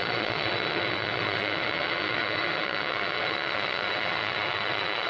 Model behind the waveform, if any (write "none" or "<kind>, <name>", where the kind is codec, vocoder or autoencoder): vocoder, WaveNeXt